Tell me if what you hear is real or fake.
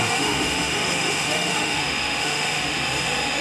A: fake